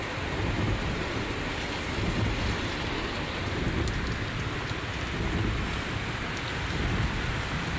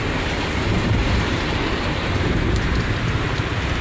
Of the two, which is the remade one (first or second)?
second